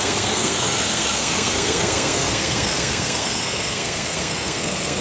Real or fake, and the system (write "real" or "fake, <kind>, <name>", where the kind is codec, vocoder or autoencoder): fake, codec, SNAC